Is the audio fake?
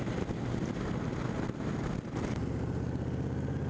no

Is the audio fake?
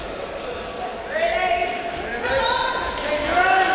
no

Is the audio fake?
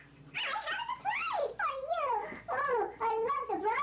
no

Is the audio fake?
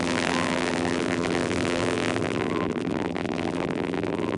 yes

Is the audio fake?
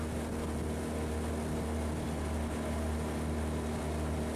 no